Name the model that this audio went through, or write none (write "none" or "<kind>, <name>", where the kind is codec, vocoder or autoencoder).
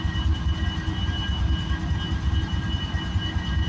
none